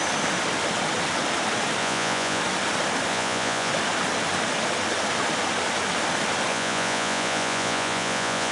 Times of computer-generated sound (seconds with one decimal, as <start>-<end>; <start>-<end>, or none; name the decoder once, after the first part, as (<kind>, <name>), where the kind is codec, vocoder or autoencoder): 1.8-2.4 (vocoder, Vocos); 3.1-3.7; 6.5-8.5